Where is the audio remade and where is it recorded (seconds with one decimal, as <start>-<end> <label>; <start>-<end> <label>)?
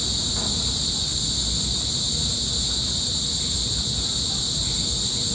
0.0-2.8 recorded; 2.8-3.8 remade; 3.8-5.3 recorded